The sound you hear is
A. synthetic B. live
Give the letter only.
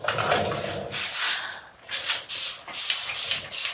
B